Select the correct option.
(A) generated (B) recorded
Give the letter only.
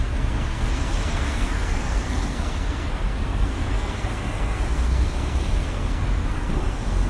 A